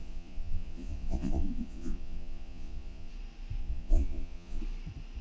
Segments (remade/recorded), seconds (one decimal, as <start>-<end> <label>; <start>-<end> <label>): 0.0-3.1 remade; 3.1-3.6 recorded; 3.6-4.6 remade; 4.6-5.2 recorded